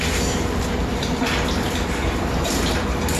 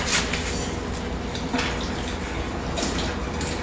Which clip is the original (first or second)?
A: second